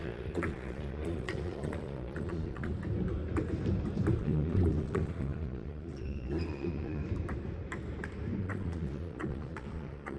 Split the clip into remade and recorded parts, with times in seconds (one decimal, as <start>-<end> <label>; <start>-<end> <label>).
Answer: 0.0-2.7 remade; 2.7-4.2 recorded; 4.2-7.0 remade; 7.0-8.4 recorded; 8.4-10.2 remade